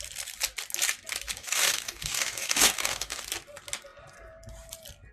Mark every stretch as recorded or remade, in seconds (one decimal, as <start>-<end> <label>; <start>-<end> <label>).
0.0-1.4 recorded; 1.4-3.2 remade; 3.2-5.1 recorded